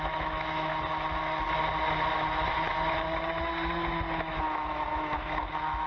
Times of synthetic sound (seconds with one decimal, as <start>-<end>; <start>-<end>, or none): 0.0-0.7; 4.2-5.9